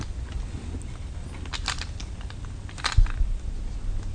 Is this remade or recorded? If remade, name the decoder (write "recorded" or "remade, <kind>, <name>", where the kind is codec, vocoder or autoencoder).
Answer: recorded